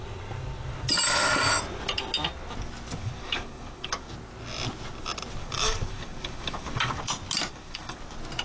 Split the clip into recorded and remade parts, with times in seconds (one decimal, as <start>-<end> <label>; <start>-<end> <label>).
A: 0.0-3.0 recorded; 3.0-4.1 remade; 4.1-5.4 recorded; 5.4-7.0 remade; 7.0-7.5 recorded; 7.5-8.0 remade; 8.0-8.4 recorded